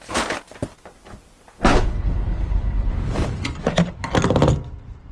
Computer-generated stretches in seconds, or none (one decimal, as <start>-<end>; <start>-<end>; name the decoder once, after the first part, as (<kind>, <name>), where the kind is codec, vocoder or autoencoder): 1.7-2.9 (codec, HILCodec)